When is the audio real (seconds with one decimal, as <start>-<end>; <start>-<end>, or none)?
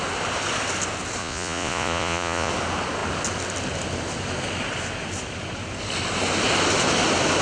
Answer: 0.0-1.2; 2.5-7.4